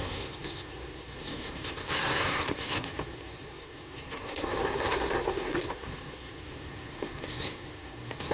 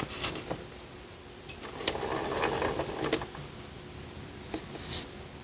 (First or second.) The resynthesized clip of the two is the first